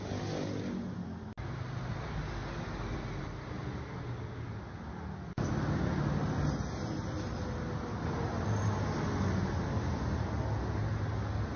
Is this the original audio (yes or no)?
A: yes